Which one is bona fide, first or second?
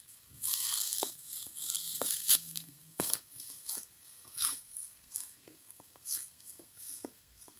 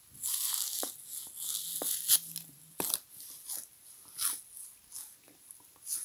second